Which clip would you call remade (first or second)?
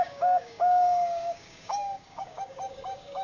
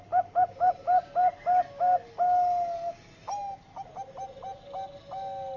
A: first